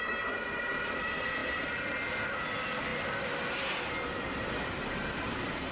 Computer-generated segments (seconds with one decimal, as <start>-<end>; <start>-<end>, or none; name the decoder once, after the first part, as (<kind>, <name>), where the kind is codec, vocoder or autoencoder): none